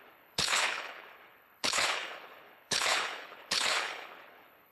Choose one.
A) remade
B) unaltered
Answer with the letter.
A